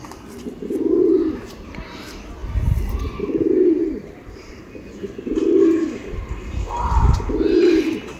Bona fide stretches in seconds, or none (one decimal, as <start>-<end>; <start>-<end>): 0.0-2.4; 4.6-8.2

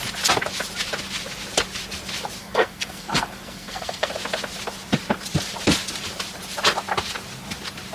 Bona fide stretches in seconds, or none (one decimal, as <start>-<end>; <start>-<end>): 0.0-2.4; 4.1-7.9

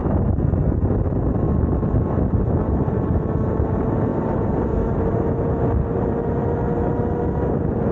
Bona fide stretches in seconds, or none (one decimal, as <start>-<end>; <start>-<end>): 0.0-7.9

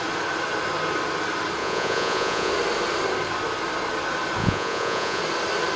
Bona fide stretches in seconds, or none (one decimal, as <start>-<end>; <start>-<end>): 0.0-1.6; 2.5-4.4; 5.2-5.8

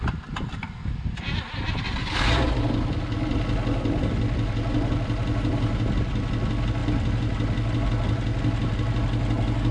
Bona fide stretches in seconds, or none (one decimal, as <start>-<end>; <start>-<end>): 0.0-9.7

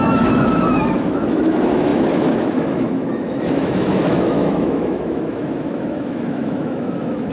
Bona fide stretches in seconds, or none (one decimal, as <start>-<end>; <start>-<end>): none

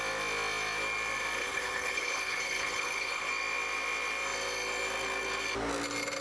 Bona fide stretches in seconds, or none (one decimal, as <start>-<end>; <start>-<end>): 0.0-1.4; 3.3-6.2